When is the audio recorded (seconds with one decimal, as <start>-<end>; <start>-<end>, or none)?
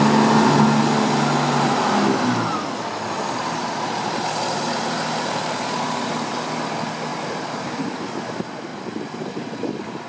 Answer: 0.0-3.6; 6.3-7.1; 7.9-10.1